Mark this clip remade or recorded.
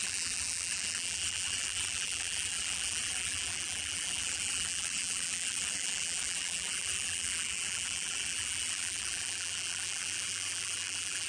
remade